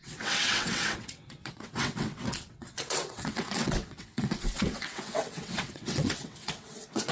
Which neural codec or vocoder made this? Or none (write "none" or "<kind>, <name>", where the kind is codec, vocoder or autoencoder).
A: vocoder, WaveNeXt